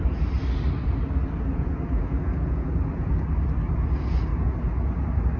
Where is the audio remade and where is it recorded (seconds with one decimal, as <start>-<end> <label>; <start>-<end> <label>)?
0.0-1.5 recorded; 1.5-3.1 remade; 3.1-4.3 recorded; 4.3-4.9 remade; 4.9-5.4 recorded